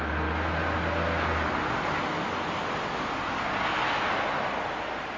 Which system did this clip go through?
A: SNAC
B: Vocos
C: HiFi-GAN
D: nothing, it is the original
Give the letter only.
D